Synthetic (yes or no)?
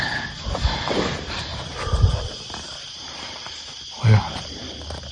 no